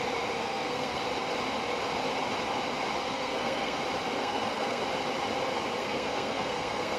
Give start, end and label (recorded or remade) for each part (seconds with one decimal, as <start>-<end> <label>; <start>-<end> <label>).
0.0-0.4 recorded; 0.4-1.0 remade; 1.0-3.0 recorded; 3.0-3.8 remade; 3.8-4.2 recorded; 4.2-4.8 remade; 4.8-5.8 recorded; 5.8-7.0 remade